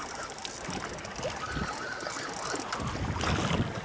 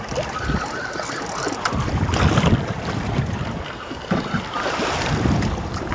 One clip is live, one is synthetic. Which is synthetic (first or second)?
second